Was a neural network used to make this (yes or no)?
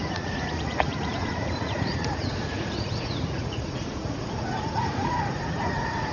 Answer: yes